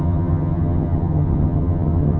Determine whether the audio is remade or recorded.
remade